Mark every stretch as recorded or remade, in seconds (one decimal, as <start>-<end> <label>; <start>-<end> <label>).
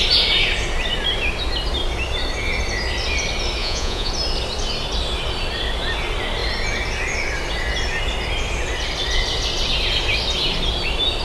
0.0-3.6 recorded; 3.6-4.1 remade; 4.1-11.2 recorded